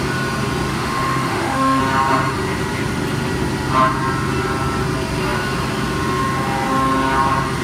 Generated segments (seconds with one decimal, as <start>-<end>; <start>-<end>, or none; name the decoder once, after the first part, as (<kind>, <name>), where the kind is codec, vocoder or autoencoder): 0.7-1.8 (autoencoder, DAC-VAE)